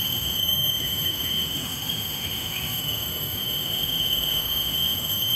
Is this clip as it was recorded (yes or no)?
no